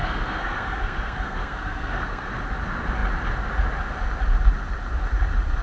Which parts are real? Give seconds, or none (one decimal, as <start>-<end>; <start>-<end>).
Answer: 2.3-5.6